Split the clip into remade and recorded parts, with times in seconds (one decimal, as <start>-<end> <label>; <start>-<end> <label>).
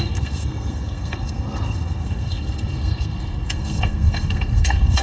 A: 0.0-5.0 remade